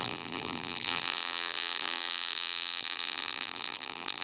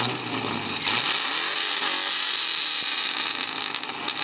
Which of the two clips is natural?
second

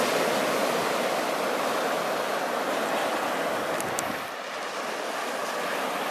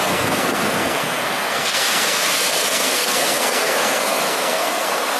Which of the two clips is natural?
first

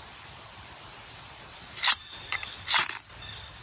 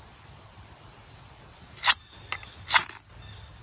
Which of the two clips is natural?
second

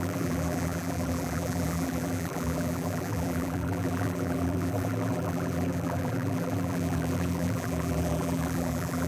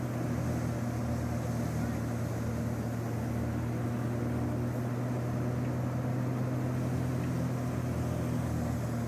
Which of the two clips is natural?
second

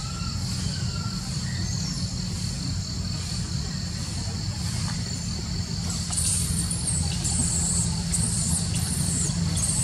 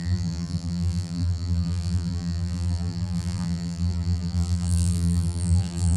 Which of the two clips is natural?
first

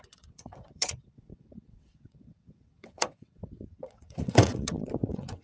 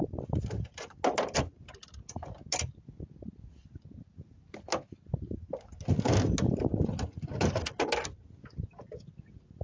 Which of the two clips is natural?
second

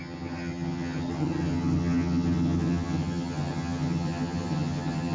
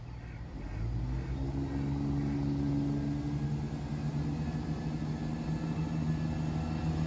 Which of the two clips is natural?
second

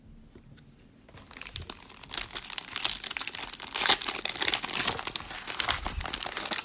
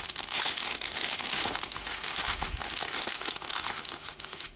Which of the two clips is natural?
first